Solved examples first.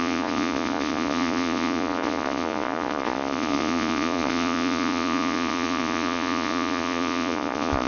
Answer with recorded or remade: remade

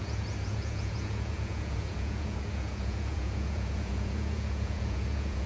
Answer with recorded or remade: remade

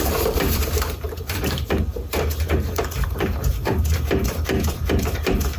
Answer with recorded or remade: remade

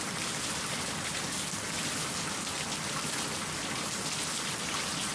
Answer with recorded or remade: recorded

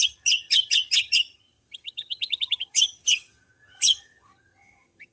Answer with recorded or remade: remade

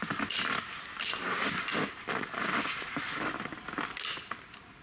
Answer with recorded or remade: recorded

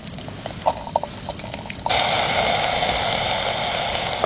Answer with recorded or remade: recorded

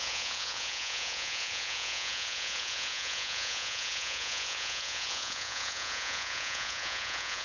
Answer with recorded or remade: remade